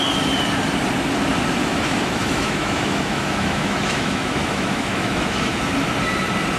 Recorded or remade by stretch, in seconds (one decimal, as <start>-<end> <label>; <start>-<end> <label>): 0.0-1.6 recorded; 1.6-5.6 remade; 5.6-6.6 recorded